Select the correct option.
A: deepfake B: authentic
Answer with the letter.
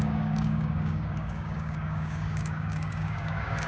A